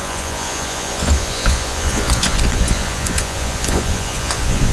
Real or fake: fake